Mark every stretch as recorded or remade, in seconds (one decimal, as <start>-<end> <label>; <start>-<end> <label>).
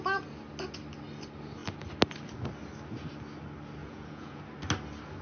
0.0-3.8 recorded; 3.8-4.4 remade; 4.4-5.2 recorded